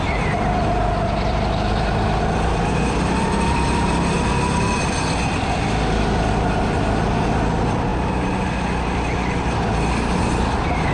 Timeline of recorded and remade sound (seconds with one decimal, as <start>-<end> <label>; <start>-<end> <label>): 0.0-10.9 recorded